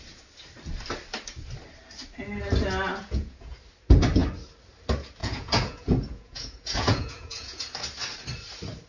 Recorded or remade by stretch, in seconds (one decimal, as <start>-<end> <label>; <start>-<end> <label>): 0.0-3.0 recorded; 3.0-3.6 remade; 3.6-5.2 recorded; 5.2-7.6 remade; 7.6-8.9 recorded